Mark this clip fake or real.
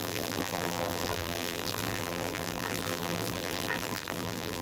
fake